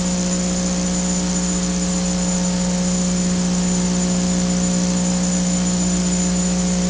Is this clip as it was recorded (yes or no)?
yes